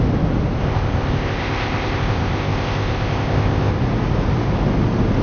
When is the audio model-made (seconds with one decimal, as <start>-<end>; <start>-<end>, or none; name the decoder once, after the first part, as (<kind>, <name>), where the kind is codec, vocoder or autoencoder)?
0.6-3.7 (codec, ZipCodec)